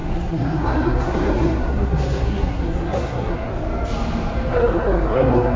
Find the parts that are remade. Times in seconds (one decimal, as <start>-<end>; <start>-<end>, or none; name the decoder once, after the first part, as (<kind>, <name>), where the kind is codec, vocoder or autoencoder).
0.0-3.5 (codec, SNAC); 4.5-5.6